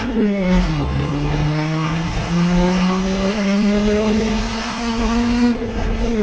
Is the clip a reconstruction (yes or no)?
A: yes